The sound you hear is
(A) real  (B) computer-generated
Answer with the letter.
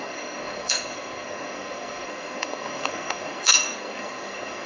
B